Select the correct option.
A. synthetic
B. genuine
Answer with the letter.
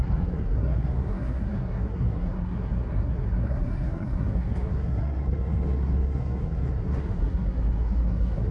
A